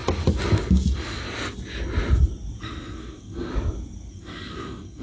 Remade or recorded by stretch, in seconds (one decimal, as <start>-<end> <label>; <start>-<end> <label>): 0.0-2.6 recorded; 2.6-3.5 remade; 3.5-4.1 recorded; 4.1-5.0 remade